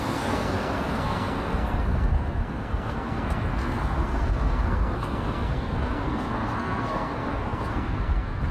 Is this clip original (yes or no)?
no